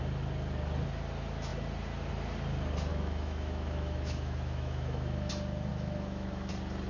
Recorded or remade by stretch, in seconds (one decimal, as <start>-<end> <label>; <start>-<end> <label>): 0.0-2.9 recorded; 2.9-5.3 remade; 5.3-5.7 recorded; 5.7-6.5 remade; 6.5-6.9 recorded